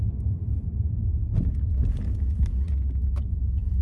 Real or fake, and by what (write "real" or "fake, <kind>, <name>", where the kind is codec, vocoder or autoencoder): real